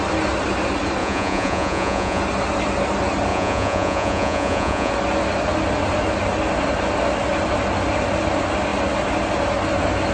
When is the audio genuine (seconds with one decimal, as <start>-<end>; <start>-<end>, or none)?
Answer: 0.0-1.0; 2.2-3.3; 4.9-10.1